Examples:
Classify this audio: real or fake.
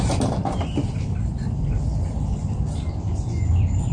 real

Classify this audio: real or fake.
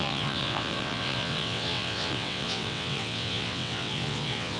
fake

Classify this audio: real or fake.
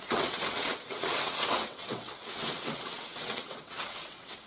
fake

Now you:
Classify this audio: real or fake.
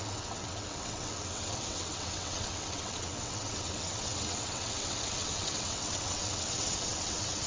fake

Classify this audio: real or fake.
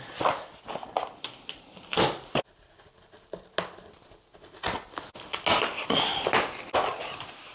real